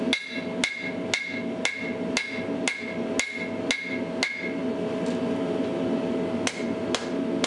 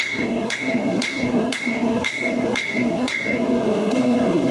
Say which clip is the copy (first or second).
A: second